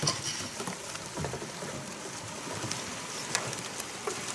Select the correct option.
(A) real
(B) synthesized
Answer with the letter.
A